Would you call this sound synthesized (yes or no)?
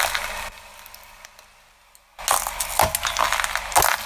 no